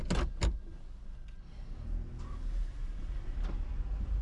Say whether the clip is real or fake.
real